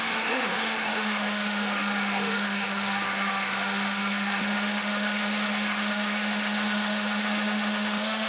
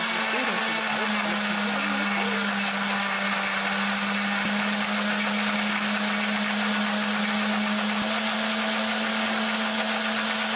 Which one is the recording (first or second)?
second